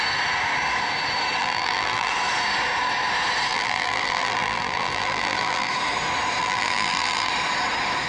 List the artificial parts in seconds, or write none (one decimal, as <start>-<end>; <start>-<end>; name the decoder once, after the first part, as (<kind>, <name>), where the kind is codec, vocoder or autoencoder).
1.4-2.1 (vocoder, BigVGAN v2); 3.5-5.7; 6.4-7.3